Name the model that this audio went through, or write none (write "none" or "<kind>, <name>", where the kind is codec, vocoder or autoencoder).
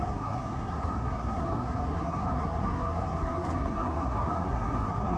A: codec, SNAC